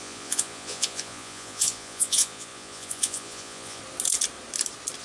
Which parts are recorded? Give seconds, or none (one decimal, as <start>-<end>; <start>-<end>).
3.8-5.0